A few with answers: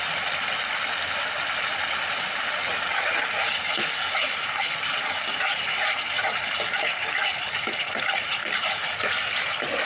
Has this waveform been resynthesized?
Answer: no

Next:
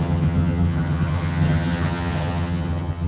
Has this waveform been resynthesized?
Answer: yes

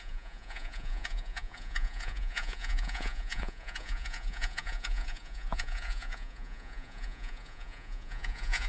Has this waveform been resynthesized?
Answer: yes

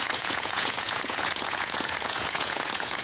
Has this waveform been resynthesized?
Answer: yes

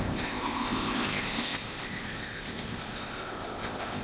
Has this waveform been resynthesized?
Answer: yes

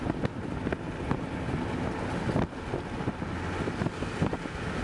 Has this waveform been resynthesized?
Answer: no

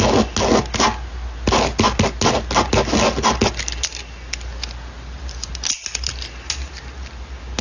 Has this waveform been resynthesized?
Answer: no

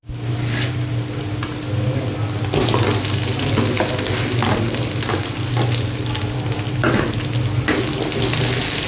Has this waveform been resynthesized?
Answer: no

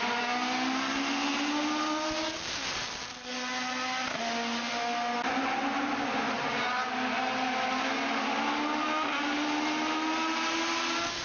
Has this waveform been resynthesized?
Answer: no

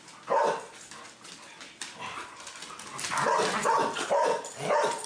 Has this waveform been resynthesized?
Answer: no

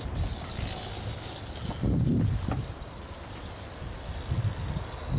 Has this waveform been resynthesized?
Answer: no